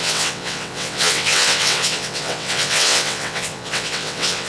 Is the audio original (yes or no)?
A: no